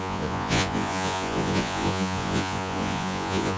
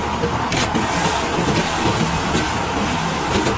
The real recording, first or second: second